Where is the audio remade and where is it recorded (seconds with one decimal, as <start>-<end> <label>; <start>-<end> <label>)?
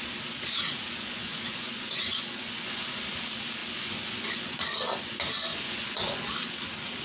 0.0-0.8 recorded; 0.8-3.0 remade; 3.0-3.6 recorded; 3.6-4.6 remade; 4.6-5.5 recorded; 5.5-6.3 remade; 6.3-7.0 recorded